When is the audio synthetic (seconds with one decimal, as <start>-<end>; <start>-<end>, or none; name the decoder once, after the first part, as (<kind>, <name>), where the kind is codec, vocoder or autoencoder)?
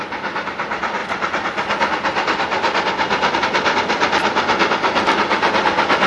1.0-3.4 (vocoder, BigVGAN v2)